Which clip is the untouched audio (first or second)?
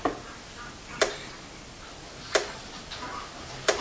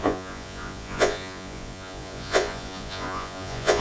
first